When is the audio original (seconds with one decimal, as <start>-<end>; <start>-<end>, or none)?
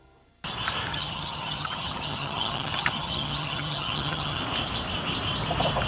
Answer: 0.0-0.9; 4.4-5.9